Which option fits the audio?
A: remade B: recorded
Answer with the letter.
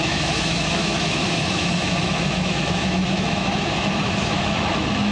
A